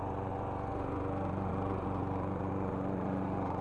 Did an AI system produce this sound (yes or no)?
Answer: yes